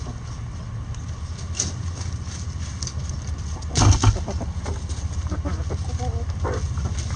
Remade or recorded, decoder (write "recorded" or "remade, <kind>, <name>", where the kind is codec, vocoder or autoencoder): recorded